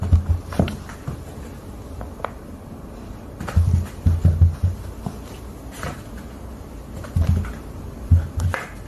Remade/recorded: recorded